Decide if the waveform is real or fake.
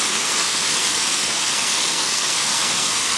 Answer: fake